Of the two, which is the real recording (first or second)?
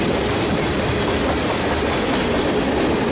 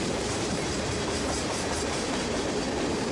first